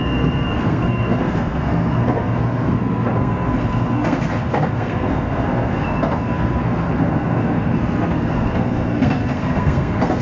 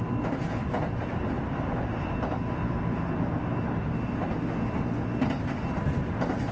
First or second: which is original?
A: second